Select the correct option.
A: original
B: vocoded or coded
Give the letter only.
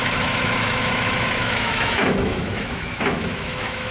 B